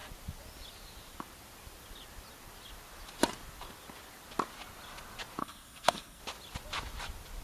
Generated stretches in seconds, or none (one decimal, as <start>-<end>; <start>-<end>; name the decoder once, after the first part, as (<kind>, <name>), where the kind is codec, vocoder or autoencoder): 5.4-6.2 (codec, SNAC)